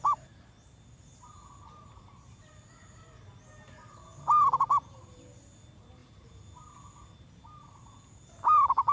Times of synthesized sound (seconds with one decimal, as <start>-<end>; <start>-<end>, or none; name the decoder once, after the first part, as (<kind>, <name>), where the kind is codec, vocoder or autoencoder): none